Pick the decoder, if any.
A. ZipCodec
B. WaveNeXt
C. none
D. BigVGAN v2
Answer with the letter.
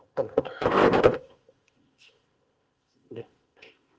A